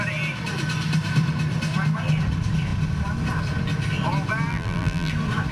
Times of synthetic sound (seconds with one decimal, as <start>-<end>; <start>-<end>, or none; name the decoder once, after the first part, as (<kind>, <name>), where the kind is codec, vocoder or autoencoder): 4.5-5.1 (vocoder, BigVGAN v2)